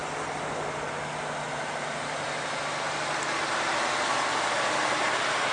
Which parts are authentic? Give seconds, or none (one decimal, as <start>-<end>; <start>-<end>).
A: 0.0-5.5